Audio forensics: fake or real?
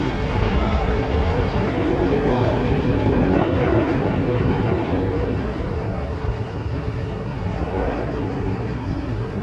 fake